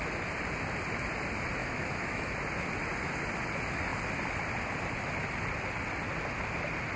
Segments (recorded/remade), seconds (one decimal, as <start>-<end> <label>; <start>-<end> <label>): 0.0-1.6 recorded; 1.6-2.3 remade; 2.3-7.0 recorded